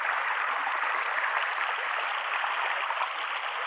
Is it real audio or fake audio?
real